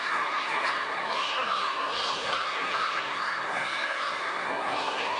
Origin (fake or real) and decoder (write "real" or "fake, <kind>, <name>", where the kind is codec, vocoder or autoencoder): fake, codec, SNAC